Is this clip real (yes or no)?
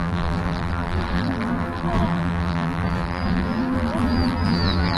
no